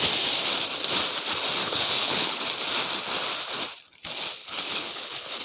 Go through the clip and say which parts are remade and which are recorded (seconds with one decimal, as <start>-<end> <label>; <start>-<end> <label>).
0.0-1.6 recorded; 1.6-2.4 remade; 2.4-4.4 recorded; 4.4-5.4 remade